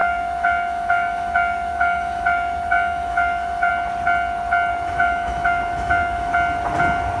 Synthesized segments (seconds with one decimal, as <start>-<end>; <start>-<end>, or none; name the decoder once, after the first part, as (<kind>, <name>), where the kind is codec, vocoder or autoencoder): 0.0-3.7 (autoencoder, DAC-VAE); 4.7-6.3